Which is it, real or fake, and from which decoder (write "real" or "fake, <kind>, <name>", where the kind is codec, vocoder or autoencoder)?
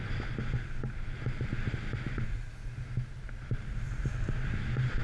real